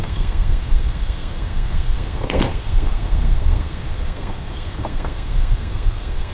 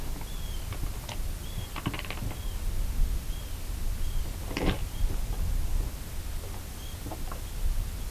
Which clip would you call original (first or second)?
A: second